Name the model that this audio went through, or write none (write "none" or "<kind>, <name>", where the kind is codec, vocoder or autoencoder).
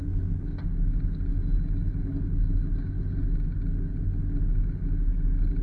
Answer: none